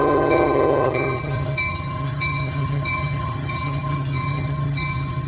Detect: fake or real fake